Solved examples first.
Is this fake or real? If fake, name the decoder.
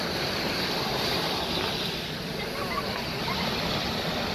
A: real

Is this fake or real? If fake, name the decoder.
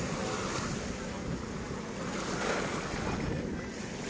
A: real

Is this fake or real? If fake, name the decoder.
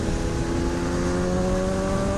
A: real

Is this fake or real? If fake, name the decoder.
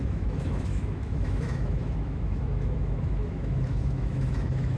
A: fake, autoencoder, DAC-VAE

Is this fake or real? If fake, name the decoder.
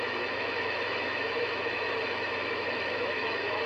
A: fake, autoencoder, DAC-VAE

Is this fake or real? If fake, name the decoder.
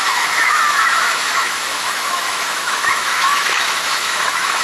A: fake, autoencoder, DAC-VAE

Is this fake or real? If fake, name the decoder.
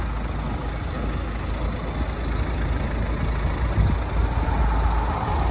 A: real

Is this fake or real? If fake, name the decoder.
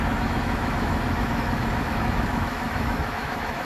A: fake, autoencoder, DAC-VAE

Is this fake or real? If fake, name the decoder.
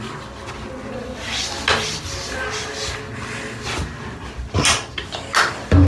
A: real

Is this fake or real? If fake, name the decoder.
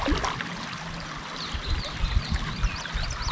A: real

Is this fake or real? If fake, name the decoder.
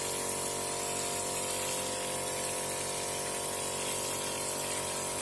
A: real